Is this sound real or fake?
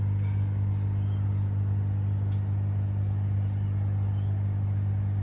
real